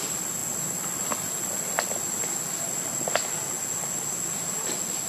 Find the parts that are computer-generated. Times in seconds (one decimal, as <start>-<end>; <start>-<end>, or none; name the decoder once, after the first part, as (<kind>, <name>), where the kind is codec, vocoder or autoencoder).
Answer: none